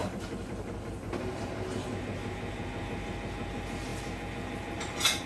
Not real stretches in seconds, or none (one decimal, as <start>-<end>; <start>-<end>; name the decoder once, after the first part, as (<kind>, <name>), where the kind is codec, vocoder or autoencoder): none